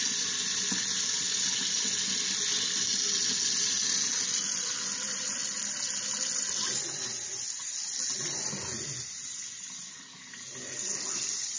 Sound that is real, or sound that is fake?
real